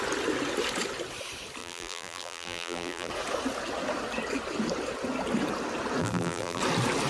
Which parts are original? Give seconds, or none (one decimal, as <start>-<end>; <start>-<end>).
0.0-1.6; 3.1-6.0; 6.6-7.1